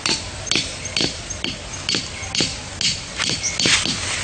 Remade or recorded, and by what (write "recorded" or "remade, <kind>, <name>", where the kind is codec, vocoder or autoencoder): recorded